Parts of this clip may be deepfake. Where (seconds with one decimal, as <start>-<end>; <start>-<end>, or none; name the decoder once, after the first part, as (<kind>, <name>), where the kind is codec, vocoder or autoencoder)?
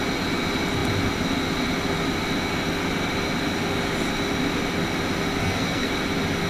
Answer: 5.4-5.9 (codec, SNAC)